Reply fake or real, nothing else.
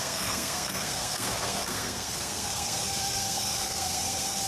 fake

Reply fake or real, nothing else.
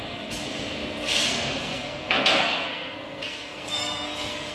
fake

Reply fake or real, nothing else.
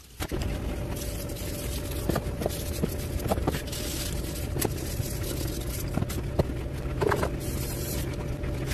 real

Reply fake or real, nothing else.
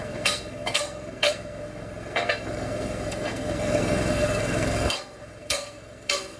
fake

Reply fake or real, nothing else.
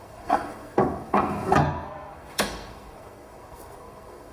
fake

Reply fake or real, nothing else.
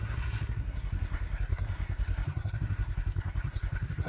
fake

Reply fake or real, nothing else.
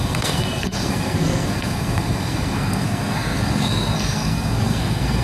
fake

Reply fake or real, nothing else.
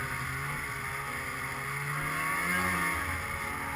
real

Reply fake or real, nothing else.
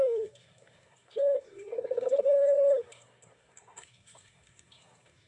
fake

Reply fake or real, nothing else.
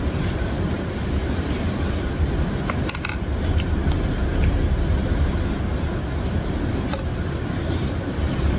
real